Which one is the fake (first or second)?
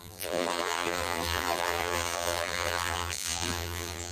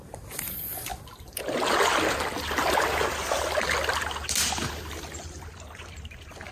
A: first